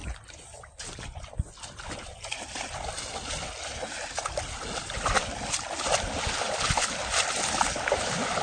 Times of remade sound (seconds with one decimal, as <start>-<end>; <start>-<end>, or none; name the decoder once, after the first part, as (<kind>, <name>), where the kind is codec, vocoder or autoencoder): 0.0-0.7 (vocoder, BigVGAN v2)